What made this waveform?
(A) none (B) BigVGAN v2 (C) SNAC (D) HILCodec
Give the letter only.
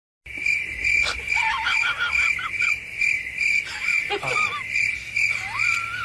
A